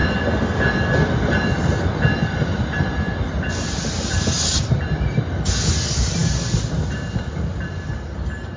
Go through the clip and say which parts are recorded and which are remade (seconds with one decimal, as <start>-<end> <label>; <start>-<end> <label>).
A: 0.0-8.6 recorded